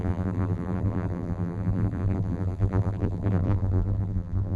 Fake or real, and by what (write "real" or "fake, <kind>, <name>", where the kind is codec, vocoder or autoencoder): fake, vocoder, BigVGAN v2